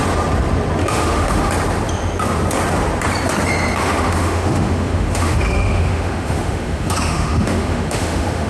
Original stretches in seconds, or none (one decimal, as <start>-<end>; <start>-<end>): 0.0-0.8; 1.5-3.8